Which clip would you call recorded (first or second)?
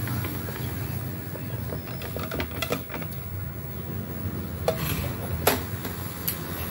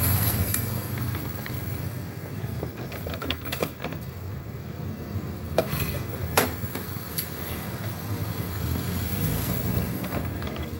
first